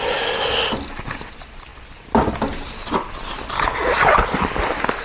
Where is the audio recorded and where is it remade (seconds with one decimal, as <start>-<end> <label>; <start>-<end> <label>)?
0.0-5.0 recorded